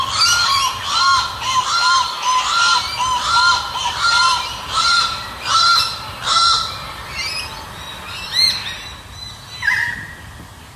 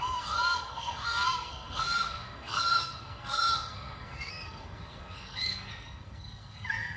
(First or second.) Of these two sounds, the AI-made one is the second